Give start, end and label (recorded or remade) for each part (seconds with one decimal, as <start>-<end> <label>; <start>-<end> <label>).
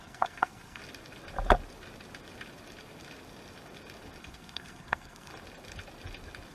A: 0.0-0.8 remade; 0.8-4.2 recorded; 4.2-5.3 remade; 5.3-6.5 recorded